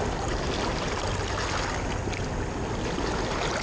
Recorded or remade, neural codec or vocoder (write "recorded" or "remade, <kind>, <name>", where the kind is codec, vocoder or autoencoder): recorded